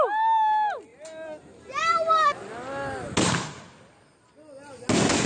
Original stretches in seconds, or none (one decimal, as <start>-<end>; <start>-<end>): 0.0-5.3